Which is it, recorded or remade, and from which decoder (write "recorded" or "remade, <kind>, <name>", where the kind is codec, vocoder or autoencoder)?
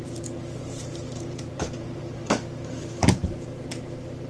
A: remade, vocoder, BigVGAN v2